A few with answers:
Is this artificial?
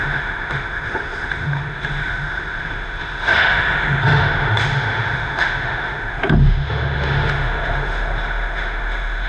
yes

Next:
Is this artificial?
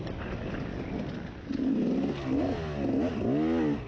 no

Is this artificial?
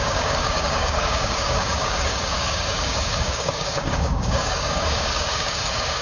yes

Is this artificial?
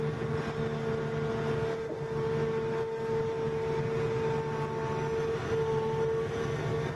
no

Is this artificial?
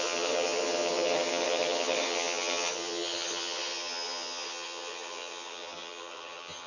yes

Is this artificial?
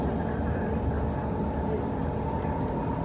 no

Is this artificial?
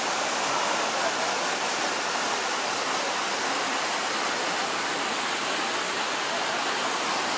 no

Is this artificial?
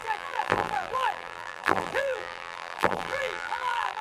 yes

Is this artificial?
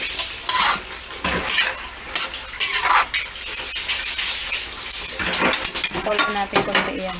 no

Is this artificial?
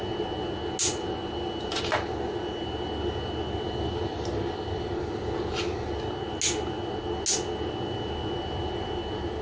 no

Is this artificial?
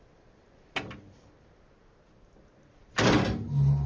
no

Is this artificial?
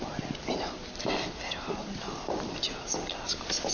no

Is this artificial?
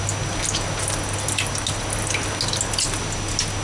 no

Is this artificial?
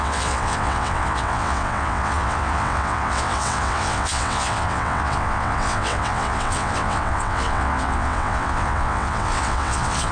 yes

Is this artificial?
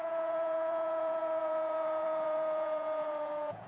yes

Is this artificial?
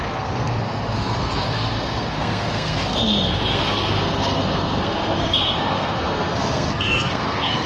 yes